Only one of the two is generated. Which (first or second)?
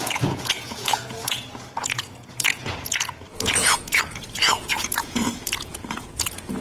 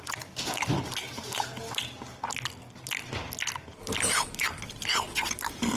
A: first